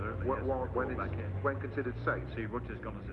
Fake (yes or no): no